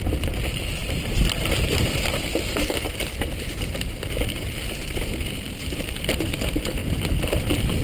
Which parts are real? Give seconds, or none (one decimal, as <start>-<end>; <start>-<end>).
0.0-0.8; 4.5-5.6; 6.2-7.8